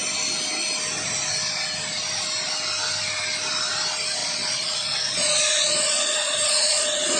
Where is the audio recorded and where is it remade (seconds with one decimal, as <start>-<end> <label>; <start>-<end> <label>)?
0.0-4.2 recorded; 4.2-7.2 remade